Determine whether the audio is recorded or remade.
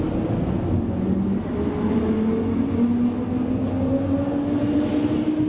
recorded